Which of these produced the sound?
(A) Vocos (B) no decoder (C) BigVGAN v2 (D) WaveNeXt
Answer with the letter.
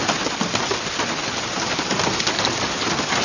B